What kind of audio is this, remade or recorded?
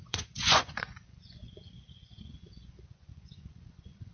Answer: remade